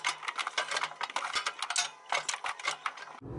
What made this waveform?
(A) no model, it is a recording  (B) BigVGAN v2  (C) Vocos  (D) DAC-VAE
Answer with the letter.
A